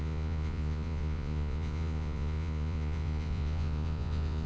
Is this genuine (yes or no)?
no